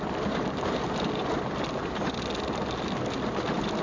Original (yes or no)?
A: yes